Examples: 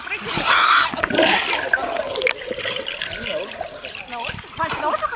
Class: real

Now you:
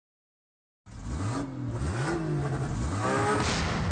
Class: real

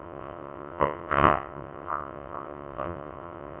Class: fake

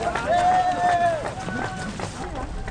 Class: real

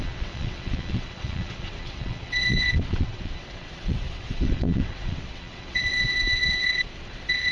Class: fake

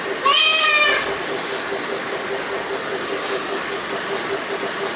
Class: real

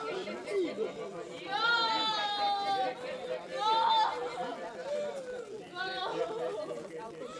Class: real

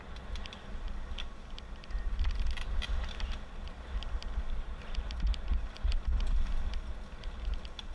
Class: real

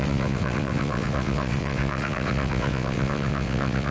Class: fake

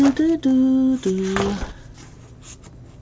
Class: real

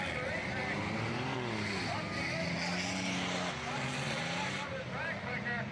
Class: real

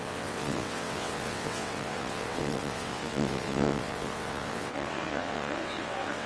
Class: fake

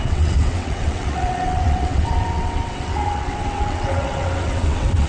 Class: fake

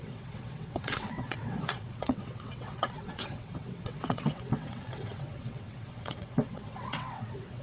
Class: fake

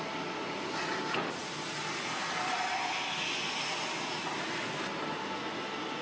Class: real